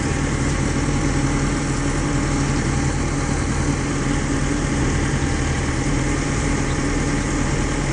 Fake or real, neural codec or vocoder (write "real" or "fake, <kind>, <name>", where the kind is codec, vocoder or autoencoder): fake, vocoder, BigVGAN v2